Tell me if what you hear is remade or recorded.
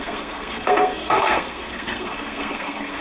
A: remade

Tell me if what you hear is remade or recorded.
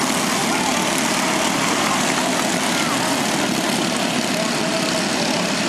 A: recorded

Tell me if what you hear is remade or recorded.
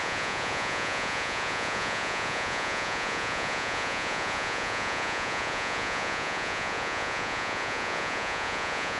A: remade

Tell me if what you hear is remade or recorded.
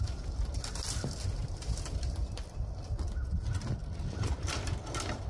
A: recorded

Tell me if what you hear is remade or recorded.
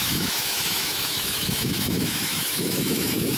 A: remade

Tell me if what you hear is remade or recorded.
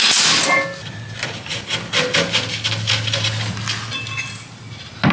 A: recorded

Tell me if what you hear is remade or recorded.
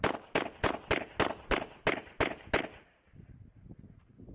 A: recorded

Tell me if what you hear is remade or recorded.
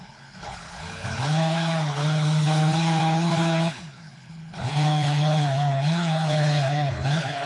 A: remade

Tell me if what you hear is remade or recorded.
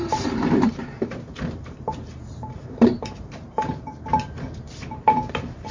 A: remade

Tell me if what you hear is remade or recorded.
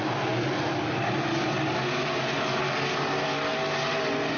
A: recorded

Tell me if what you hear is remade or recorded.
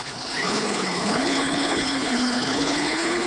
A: remade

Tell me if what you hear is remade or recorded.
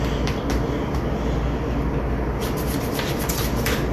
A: recorded